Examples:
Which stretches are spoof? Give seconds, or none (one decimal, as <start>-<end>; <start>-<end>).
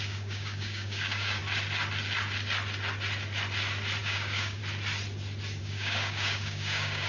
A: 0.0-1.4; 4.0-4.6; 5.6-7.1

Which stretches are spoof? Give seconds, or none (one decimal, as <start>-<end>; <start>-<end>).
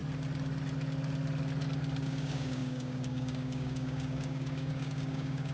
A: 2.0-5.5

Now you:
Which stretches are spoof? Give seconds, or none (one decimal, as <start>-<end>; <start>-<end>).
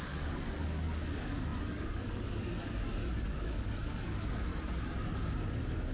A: 0.0-4.5; 5.5-5.9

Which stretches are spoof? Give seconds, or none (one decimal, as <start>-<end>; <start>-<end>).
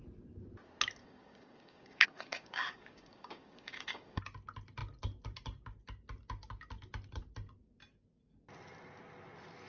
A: 1.0-4.2